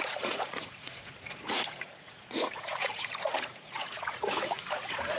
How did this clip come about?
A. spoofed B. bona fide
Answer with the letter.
A